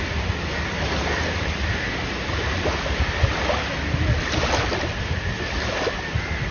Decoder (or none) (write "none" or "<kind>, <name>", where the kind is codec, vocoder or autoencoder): none